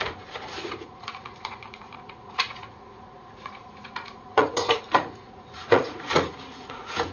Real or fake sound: fake